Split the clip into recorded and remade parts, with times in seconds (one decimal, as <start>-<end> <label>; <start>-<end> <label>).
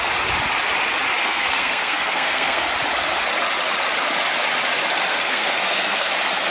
0.0-1.2 recorded; 1.2-2.7 remade; 2.7-5.1 recorded; 5.1-6.1 remade; 6.1-6.5 recorded